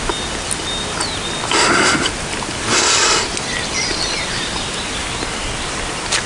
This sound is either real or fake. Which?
real